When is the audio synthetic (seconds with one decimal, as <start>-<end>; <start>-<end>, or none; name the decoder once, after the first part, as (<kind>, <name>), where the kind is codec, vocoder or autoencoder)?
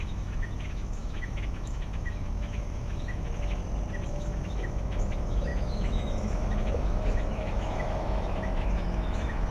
0.0-3.6 (autoencoder, DAC-VAE); 4.1-9.5